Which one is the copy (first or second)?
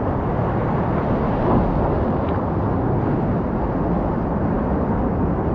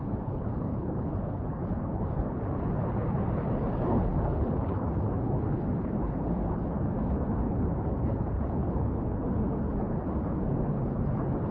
second